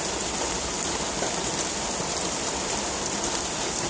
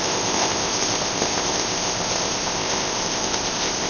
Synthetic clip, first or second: second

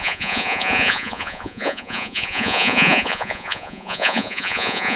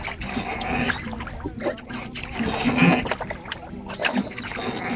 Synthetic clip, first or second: first